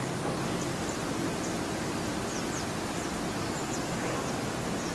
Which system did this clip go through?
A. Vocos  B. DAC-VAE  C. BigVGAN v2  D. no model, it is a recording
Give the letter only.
D